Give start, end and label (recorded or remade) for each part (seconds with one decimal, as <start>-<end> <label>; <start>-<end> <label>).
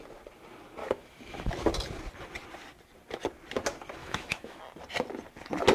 0.0-0.8 recorded; 0.8-1.5 remade; 1.5-4.0 recorded; 4.0-4.6 remade; 4.6-5.7 recorded